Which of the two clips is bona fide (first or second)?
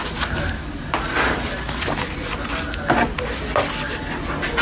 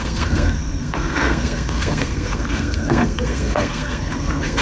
first